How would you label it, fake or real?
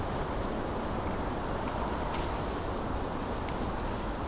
real